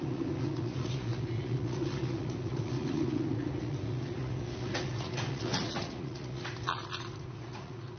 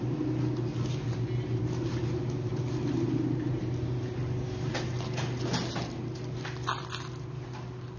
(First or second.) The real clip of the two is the second